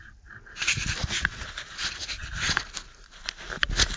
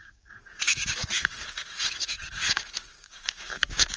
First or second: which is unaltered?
first